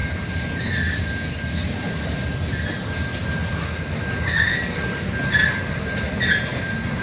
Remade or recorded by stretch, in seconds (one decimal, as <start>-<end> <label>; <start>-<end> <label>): 0.0-7.0 recorded